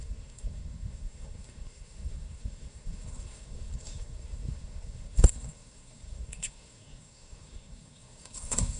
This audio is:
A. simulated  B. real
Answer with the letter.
A